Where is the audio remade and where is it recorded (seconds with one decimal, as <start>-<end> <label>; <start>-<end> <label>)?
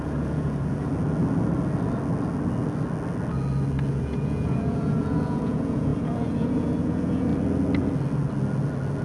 0.0-0.9 remade; 0.9-3.9 recorded; 3.9-7.3 remade; 7.3-9.0 recorded